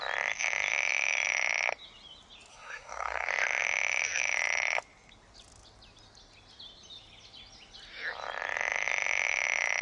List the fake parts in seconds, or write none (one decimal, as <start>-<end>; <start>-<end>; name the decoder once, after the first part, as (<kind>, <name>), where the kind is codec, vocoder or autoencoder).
2.5-3.3 (codec, SNAC)